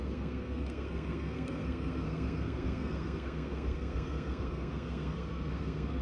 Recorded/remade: remade